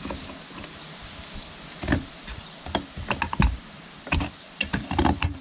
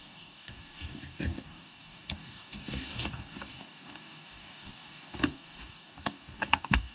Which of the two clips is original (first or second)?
first